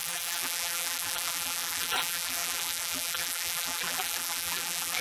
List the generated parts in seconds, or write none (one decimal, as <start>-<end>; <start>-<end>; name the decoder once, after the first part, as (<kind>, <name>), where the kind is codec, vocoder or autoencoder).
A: 0.0-5.0 (vocoder, BigVGAN v2)